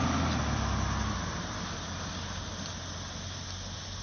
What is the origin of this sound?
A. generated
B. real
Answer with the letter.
B